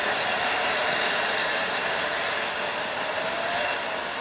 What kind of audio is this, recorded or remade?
remade